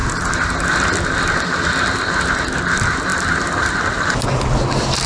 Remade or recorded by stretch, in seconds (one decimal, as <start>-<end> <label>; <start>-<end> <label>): 0.0-5.1 recorded